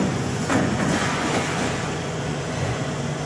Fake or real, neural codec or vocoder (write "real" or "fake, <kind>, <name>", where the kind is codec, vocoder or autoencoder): fake, vocoder, Vocos